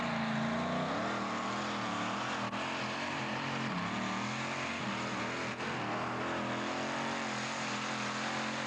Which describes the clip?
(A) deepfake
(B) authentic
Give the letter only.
B